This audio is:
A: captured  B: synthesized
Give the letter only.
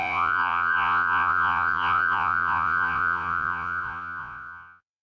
B